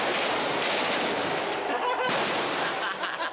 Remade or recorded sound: recorded